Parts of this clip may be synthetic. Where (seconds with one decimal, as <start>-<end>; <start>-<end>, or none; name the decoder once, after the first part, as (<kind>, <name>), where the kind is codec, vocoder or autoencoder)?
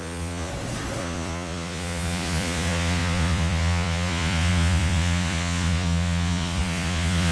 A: 0.0-0.5 (vocoder, Vocos); 1.0-7.3